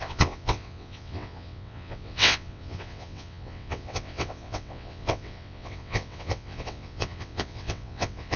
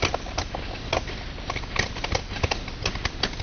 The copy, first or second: first